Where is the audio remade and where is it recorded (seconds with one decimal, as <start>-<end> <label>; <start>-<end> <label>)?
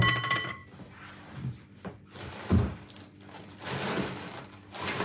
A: 0.0-5.0 recorded